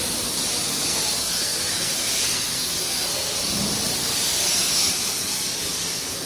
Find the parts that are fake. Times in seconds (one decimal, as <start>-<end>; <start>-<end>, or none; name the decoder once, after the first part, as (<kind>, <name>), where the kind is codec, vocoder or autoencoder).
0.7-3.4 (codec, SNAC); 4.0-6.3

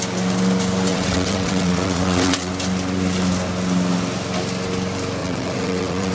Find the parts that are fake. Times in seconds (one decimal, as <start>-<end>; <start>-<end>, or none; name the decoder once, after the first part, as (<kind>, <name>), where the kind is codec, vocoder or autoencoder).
0.9-2.5 (vocoder, WaveNeXt); 5.2-6.1

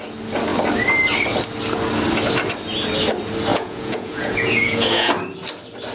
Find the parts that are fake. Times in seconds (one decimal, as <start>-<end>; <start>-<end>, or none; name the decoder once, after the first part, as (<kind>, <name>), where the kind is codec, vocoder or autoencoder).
3.5-5.1 (vocoder, Vocos)

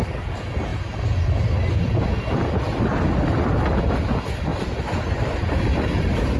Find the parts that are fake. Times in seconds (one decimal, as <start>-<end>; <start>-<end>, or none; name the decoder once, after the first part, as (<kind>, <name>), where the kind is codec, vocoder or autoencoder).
none

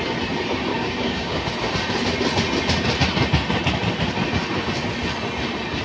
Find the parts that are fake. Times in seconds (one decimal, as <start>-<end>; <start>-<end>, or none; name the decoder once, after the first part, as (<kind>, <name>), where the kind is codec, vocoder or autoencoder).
0.7-1.5 (codec, DAC)